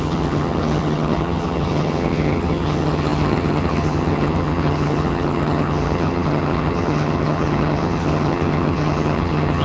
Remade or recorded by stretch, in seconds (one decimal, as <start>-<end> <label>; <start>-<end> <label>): 0.0-9.6 remade